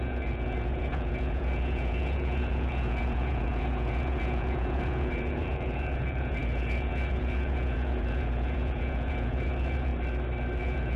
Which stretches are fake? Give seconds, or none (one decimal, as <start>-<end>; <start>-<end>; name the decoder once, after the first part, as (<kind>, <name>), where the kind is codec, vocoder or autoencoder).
0.0-9.9 (vocoder, Vocos); 10.6-11.0